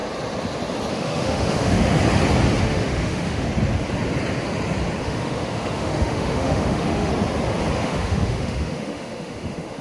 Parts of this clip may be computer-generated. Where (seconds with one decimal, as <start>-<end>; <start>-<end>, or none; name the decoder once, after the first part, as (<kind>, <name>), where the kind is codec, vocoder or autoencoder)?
0.9-1.9 (autoencoder, DAC-VAE); 2.6-3.5; 5.0-7.1; 7.8-9.8